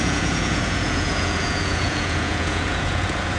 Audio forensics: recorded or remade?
remade